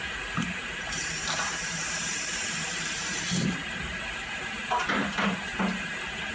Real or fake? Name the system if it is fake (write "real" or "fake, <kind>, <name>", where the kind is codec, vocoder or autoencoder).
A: fake, vocoder, BigVGAN v2